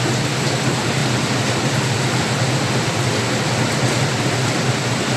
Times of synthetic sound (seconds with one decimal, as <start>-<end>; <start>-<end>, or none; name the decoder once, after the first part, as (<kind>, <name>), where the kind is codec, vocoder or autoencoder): 1.0-4.1 (vocoder, BigVGAN v2)